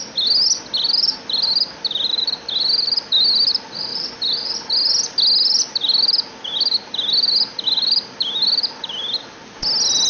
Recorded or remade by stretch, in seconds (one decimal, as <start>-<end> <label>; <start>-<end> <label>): 0.0-10.1 recorded